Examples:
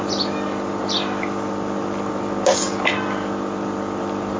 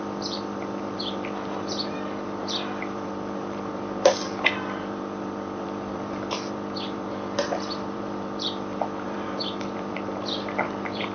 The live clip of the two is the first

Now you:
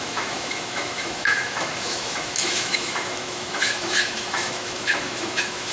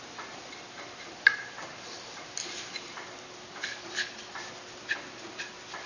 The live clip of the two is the second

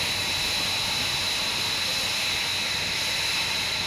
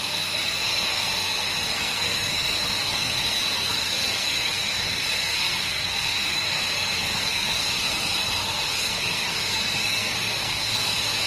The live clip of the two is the first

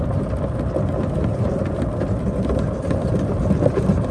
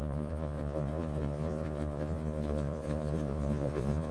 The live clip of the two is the first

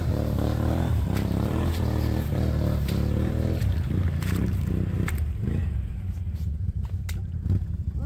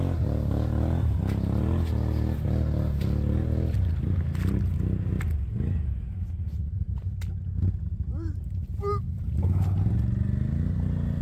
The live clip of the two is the second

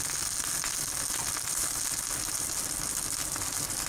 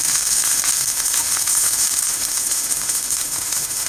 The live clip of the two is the first